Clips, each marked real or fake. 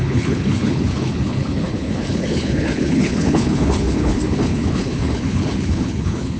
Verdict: fake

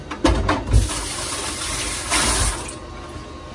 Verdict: real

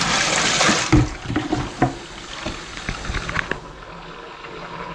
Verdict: real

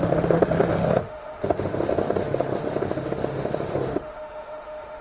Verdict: fake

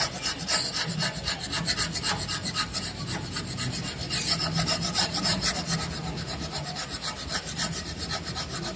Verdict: real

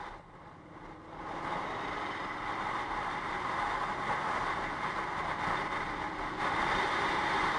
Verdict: real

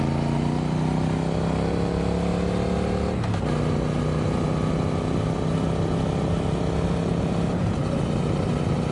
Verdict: real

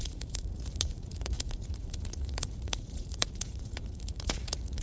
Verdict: fake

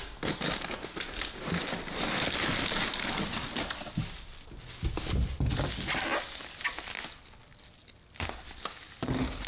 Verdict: real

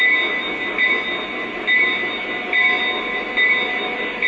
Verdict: real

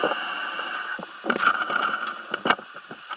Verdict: real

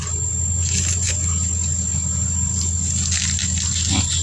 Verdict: real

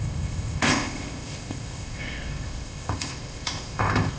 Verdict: fake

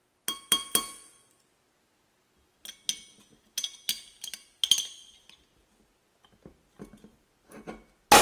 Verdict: real